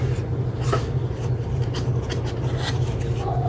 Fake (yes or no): no